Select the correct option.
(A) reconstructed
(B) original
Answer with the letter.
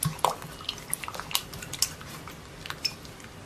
B